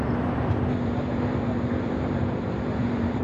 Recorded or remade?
remade